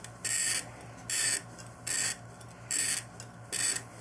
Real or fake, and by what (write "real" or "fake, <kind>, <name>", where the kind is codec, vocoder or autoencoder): real